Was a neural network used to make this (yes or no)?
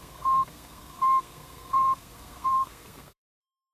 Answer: yes